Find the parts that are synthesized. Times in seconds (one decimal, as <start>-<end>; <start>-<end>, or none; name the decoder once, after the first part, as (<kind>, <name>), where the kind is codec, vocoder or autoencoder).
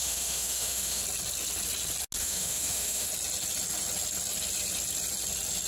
0.0-1.0 (autoencoder, DAC-VAE); 2.2-3.1